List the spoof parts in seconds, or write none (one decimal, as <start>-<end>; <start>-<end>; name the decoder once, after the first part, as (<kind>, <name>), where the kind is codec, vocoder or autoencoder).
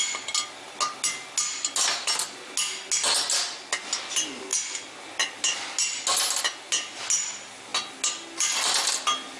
none